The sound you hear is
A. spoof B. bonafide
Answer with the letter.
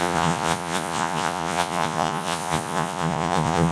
A